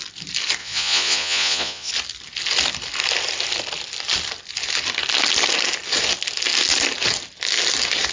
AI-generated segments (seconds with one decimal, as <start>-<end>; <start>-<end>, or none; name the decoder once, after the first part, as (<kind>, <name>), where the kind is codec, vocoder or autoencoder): 0.6-1.9 (vocoder, Vocos)